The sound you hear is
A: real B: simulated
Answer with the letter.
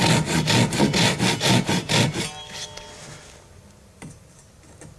A